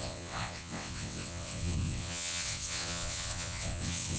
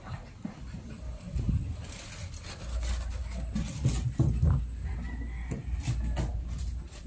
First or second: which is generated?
first